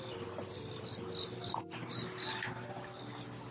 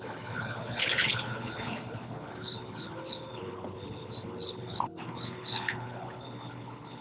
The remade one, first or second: second